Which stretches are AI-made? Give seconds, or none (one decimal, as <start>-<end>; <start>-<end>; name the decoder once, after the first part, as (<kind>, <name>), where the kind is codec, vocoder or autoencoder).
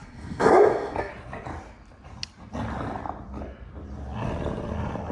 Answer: 0.0-1.1 (codec, SNAC)